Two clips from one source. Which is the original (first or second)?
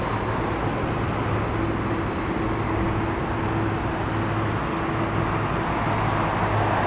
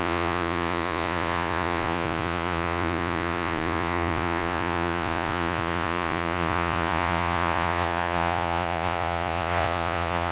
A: first